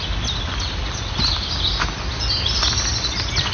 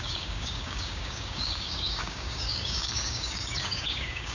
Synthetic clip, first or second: second